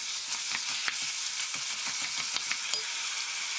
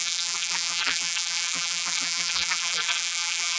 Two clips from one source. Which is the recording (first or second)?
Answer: first